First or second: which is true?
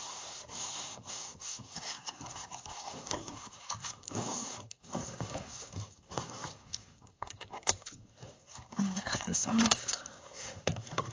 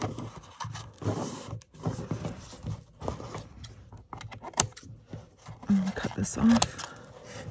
second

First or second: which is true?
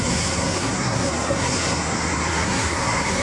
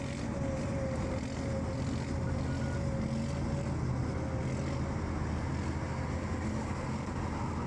second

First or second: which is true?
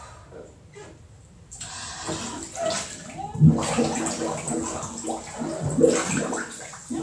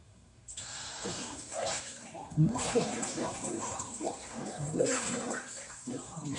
first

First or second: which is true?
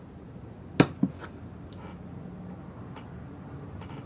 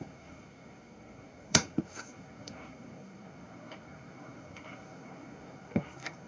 first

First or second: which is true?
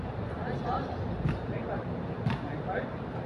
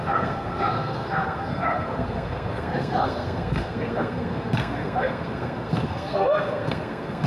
first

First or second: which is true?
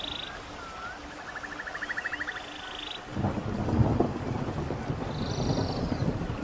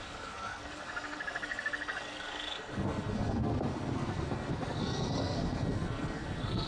first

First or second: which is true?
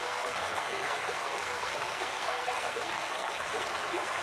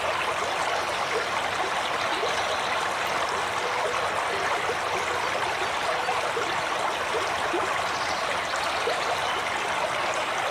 second